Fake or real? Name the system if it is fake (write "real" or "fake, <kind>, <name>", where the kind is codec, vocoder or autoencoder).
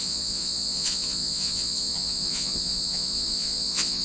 fake, vocoder, Vocos